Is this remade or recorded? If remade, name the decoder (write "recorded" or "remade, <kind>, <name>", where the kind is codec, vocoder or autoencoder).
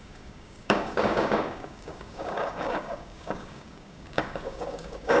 remade, codec, DAC